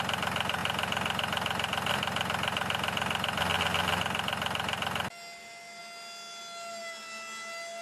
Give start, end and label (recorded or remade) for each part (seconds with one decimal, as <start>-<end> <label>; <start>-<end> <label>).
0.0-7.8 recorded